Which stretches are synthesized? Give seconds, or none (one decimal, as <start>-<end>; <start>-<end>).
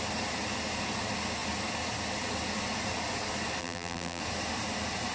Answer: 3.6-4.2